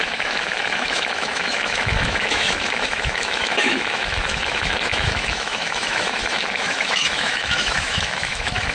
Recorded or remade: remade